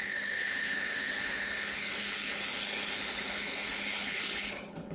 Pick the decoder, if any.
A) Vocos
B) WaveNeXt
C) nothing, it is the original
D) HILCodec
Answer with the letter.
D